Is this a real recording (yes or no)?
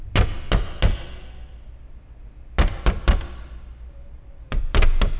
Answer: yes